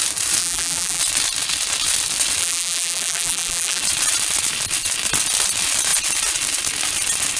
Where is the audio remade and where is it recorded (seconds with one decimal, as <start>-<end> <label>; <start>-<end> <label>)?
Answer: 0.0-0.4 recorded; 0.4-1.0 remade; 1.0-2.4 recorded; 2.4-3.8 remade; 3.8-7.4 recorded

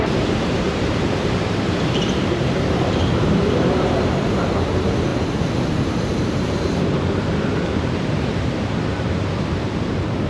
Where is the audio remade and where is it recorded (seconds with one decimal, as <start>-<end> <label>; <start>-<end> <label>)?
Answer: 0.0-10.3 remade

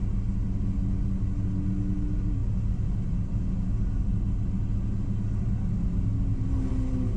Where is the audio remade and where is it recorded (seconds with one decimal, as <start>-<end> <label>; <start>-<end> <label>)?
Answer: 0.0-7.2 recorded